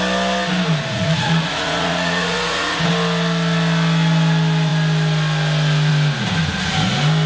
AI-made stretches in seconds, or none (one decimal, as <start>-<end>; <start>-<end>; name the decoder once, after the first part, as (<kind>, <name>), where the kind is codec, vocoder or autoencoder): 0.9-2.8 (vocoder, Vocos)